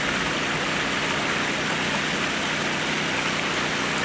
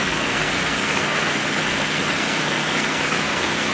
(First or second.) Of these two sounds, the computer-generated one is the second